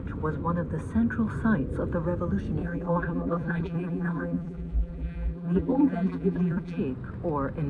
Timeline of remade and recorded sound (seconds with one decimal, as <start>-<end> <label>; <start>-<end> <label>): 0.0-2.6 recorded; 2.6-6.8 remade; 6.8-7.7 recorded